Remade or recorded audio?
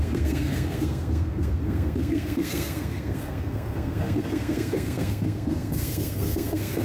remade